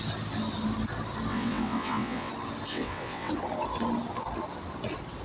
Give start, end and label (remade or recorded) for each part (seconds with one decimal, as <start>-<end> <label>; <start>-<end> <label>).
0.0-1.3 recorded; 1.3-2.3 remade; 2.3-2.7 recorded; 2.7-3.3 remade; 3.3-5.2 recorded